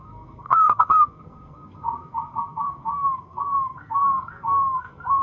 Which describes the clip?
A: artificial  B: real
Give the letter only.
A